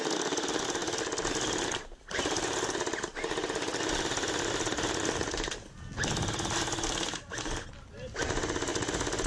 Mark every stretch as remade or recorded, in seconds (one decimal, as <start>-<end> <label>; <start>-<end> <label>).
0.0-9.3 recorded